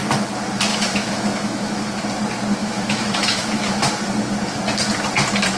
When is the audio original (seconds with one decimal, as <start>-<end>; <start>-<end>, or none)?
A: 0.0-0.7; 2.0-2.6; 3.9-5.6